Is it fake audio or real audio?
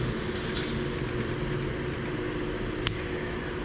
real